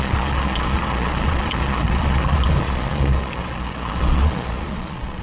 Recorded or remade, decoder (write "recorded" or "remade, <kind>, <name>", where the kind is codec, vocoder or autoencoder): remade, vocoder, Vocos